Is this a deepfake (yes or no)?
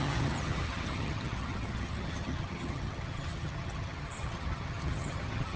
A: yes